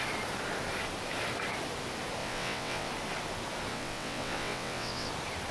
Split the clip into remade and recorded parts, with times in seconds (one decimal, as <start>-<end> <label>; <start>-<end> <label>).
0.0-2.2 recorded; 2.2-2.9 remade; 2.9-3.7 recorded; 3.7-5.1 remade; 5.1-5.5 recorded